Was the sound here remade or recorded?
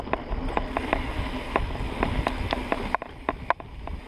recorded